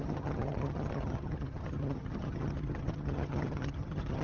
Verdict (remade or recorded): remade